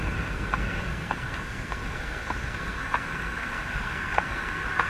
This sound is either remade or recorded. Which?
remade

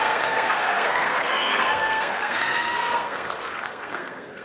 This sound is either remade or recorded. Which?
remade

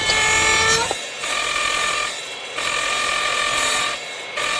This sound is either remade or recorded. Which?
recorded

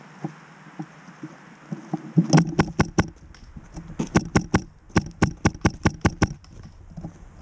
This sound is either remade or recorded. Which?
recorded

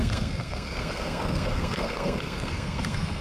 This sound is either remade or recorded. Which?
remade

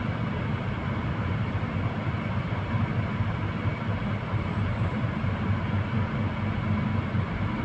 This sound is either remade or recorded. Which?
recorded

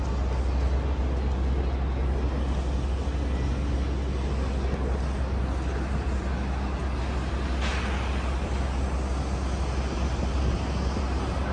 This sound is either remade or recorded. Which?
recorded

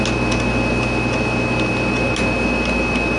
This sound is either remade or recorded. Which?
recorded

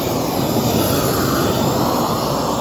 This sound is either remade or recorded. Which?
recorded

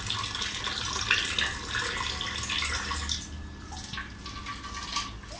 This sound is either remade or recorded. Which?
recorded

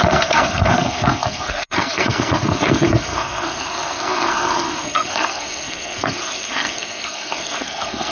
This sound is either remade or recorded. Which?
remade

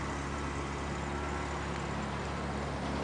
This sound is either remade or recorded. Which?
recorded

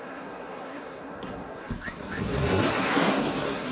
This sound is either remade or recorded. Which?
remade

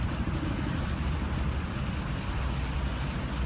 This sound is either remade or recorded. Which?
recorded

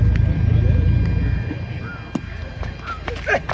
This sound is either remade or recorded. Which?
recorded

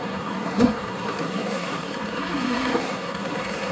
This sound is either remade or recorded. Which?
remade